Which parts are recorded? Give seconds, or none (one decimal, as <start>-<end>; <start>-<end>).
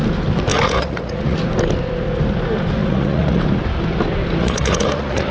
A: 0.0-0.5; 1.4-2.8; 3.4-4.4